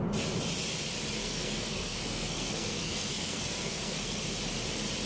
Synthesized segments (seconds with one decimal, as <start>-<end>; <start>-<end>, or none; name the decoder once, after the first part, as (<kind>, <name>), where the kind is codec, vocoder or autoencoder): 1.2-4.3 (codec, SNAC)